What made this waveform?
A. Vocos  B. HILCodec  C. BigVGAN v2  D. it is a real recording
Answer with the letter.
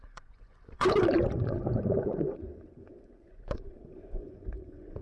A